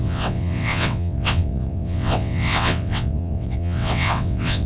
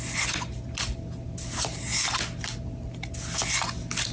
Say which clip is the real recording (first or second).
second